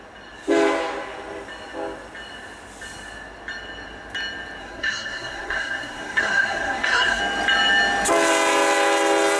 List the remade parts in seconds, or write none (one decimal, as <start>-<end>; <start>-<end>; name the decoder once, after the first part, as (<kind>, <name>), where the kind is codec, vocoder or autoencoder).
4.6-7.2 (codec, SNAC)